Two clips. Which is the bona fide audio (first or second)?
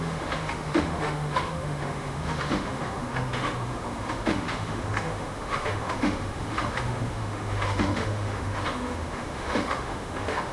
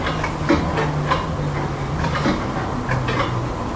second